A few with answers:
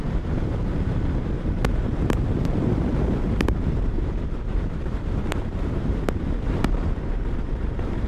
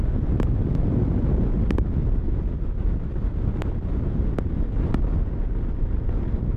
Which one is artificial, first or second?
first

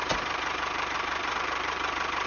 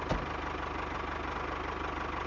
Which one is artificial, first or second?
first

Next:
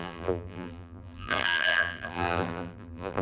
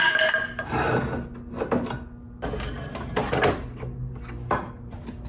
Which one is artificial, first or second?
first